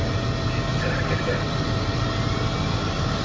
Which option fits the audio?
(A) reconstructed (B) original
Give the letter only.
A